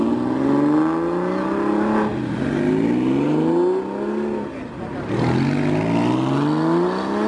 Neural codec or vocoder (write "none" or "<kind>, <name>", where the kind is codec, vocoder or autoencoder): none